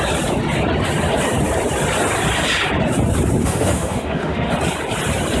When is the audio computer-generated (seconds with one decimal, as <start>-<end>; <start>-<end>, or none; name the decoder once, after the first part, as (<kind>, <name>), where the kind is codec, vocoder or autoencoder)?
3.4-4.5 (autoencoder, DAC-VAE)